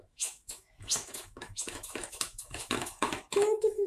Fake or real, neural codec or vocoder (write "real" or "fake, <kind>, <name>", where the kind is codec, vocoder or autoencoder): fake, autoencoder, DAC-VAE